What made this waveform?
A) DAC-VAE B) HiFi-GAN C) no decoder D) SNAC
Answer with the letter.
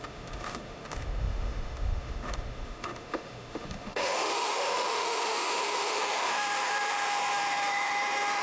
A